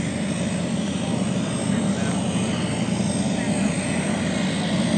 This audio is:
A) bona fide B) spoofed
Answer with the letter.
A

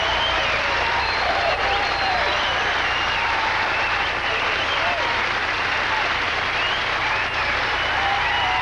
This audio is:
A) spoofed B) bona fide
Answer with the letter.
A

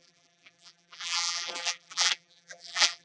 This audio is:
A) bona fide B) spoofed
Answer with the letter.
B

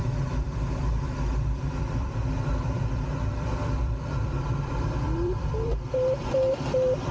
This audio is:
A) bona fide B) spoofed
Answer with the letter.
B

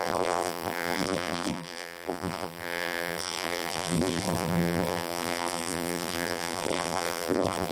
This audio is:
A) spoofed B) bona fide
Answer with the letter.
A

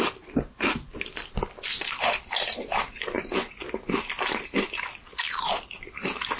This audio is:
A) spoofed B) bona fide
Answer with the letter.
B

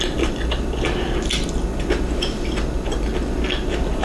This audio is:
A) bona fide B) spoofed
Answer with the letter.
A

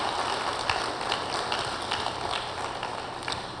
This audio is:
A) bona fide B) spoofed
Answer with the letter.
A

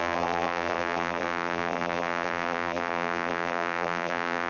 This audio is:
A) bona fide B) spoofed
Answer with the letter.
B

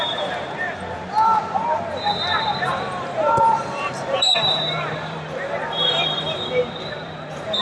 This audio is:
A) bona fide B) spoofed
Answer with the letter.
B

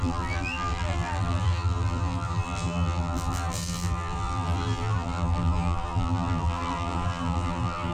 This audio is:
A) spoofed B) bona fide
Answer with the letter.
A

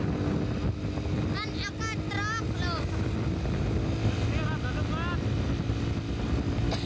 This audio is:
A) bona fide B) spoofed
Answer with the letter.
A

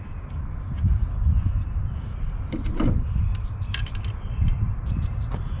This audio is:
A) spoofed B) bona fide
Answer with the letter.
A